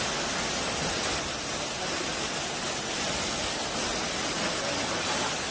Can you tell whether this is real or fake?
real